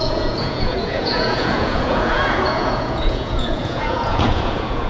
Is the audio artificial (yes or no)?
yes